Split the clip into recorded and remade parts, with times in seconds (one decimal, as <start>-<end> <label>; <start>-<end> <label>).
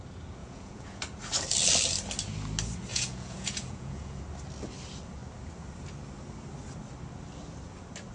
0.0-0.4 recorded; 0.4-1.0 remade; 1.0-2.9 recorded; 2.9-4.2 remade; 4.2-8.1 recorded